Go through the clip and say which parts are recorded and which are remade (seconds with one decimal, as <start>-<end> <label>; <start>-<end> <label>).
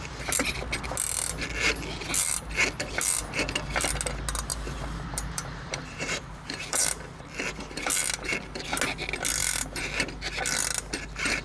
0.0-4.5 recorded; 4.5-7.0 remade; 7.0-9.4 recorded; 9.4-10.1 remade; 10.1-11.4 recorded